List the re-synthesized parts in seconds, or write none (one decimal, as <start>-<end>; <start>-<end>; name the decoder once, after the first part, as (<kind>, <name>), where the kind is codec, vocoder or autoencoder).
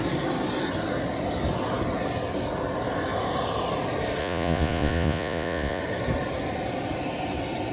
4.2-5.8 (vocoder, Vocos)